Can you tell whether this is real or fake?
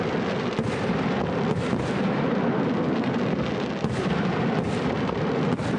real